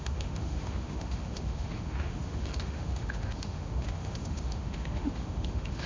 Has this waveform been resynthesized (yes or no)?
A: yes